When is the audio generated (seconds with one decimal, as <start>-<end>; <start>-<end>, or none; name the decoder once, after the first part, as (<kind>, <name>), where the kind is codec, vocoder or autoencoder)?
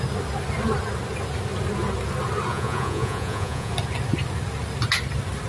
2.5-3.7 (vocoder, Vocos)